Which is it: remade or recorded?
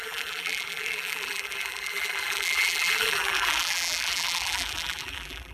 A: remade